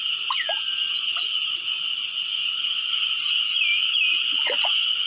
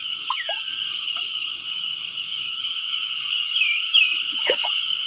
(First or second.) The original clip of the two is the first